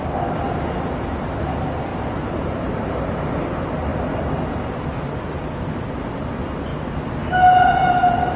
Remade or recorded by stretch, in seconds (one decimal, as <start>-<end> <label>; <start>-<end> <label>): 0.0-1.9 recorded; 1.9-3.4 remade; 3.4-8.4 recorded